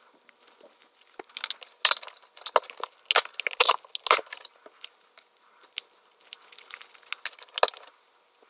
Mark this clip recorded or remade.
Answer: recorded